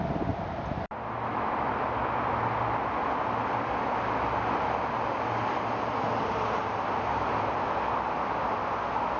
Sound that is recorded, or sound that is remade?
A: recorded